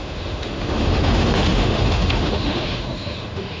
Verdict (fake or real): fake